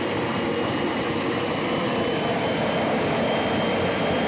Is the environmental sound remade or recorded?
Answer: remade